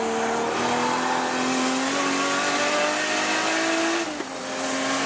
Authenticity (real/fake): real